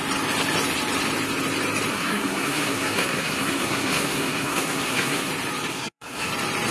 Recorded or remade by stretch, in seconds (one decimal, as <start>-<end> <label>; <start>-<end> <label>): 0.0-1.9 recorded; 1.9-5.3 remade; 5.3-5.7 recorded; 5.7-6.3 remade; 6.3-6.7 recorded